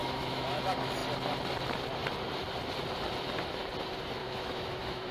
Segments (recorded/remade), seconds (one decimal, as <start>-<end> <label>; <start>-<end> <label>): 0.0-0.6 remade; 0.6-4.2 recorded; 4.2-5.1 remade